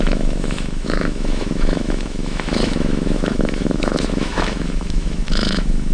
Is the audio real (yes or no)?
no